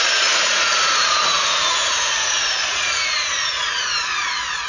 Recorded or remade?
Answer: remade